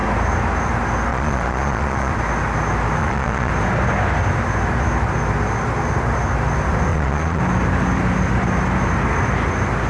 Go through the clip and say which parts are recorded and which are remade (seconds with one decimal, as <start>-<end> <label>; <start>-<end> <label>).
0.0-1.1 recorded; 1.1-2.1 remade; 2.1-3.0 recorded; 3.0-3.5 remade; 3.5-6.9 recorded; 6.9-7.4 remade; 7.4-9.9 recorded